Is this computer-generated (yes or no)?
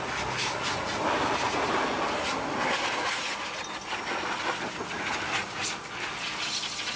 no